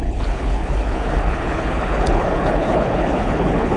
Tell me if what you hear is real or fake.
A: fake